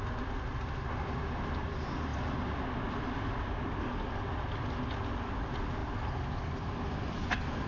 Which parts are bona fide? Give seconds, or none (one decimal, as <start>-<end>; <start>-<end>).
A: 0.0-7.7